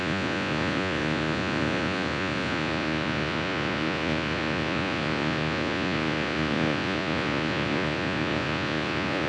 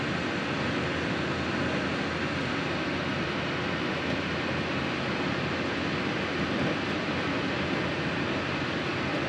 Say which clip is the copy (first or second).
first